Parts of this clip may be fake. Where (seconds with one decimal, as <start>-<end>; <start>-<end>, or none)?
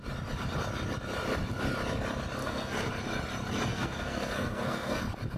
2.4-2.9; 3.7-5.0